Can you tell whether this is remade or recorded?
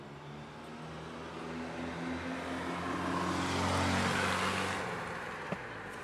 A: recorded